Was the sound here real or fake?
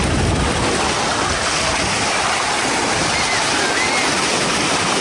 real